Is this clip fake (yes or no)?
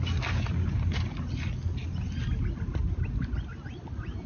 no